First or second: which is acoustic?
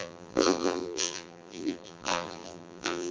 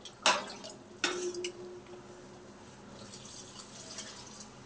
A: second